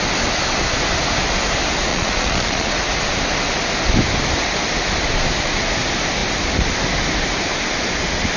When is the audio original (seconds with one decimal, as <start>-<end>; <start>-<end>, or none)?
0.0-1.9; 2.7-8.4